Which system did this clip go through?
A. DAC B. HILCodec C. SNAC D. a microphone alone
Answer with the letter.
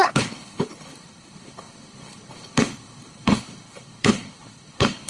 B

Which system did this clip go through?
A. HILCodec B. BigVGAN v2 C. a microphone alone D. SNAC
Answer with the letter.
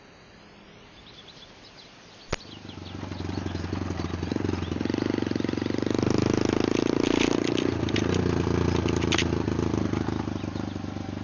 C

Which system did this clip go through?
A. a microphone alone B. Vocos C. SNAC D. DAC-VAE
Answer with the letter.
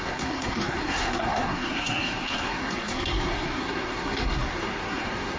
C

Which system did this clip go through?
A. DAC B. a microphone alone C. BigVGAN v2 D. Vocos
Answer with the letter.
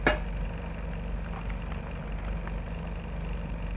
B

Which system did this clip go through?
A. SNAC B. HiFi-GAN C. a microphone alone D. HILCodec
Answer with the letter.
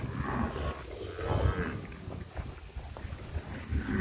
C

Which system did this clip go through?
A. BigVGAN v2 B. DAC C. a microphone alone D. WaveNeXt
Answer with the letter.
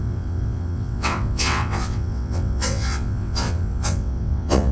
D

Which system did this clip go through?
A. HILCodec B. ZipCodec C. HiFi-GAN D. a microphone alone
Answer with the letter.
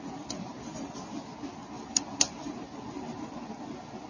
D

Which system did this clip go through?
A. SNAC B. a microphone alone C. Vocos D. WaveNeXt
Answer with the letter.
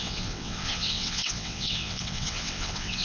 D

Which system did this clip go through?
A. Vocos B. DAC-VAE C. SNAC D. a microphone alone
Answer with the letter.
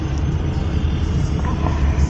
D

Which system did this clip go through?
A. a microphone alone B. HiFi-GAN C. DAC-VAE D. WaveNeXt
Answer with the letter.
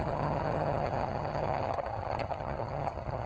B